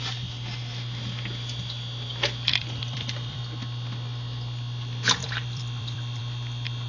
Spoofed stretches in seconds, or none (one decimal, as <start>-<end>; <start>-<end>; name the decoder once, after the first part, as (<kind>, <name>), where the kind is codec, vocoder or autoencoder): 2.3-3.4 (vocoder, BigVGAN v2); 5.2-6.2